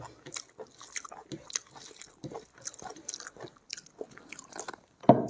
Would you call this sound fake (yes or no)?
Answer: no